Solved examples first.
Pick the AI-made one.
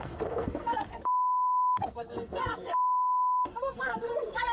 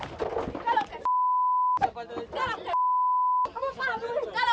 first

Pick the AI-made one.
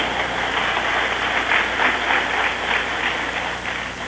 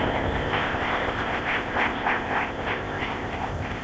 second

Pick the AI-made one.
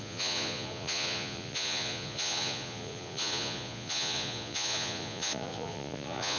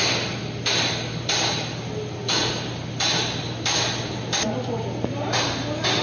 first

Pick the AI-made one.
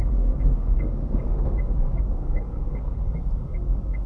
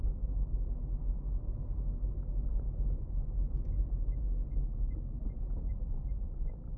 first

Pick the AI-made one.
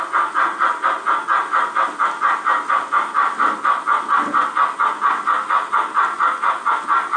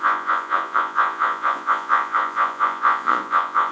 second